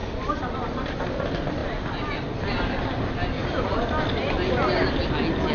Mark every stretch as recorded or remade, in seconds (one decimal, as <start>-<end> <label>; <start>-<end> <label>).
0.0-5.5 recorded